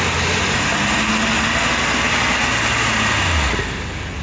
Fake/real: real